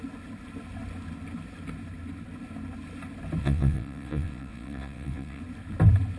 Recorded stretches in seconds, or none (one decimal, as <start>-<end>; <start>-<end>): 0.0-3.4; 5.4-6.2